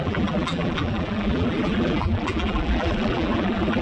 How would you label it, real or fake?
fake